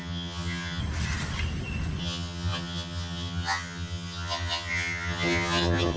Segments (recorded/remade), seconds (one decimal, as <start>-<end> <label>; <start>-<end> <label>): 0.0-0.8 remade; 0.8-2.0 recorded; 2.0-6.0 remade